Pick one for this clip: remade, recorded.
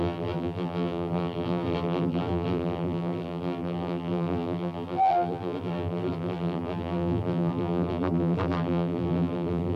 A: remade